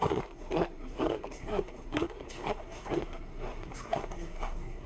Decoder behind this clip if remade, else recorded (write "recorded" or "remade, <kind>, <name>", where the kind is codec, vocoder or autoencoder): remade, codec, SNAC